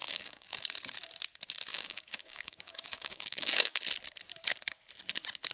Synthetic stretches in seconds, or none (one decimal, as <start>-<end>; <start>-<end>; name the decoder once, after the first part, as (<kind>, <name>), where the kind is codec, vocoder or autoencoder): 0.0-0.6 (codec, DAC); 1.7-3.8

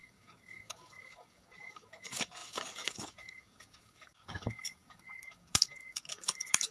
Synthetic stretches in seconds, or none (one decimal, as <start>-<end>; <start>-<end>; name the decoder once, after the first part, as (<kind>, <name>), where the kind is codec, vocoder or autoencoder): 0.0-6.7 (codec, DAC)

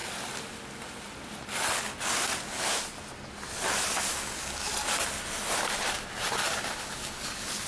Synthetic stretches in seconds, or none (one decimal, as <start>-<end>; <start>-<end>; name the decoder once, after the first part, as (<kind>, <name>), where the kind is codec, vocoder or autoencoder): 4.1-4.7 (codec, DAC); 6.4-7.7

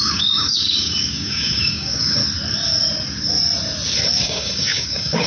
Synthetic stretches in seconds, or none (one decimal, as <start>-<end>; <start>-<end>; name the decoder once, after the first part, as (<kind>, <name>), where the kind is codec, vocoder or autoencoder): 0.0-2.2 (codec, DAC); 4.2-5.3

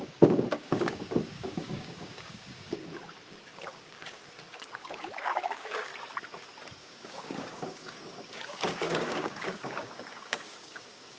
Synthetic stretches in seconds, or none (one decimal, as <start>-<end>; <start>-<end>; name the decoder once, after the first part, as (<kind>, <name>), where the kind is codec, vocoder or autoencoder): 0.0-5.9 (codec, DAC); 6.8-11.2